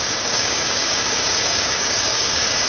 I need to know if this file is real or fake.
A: fake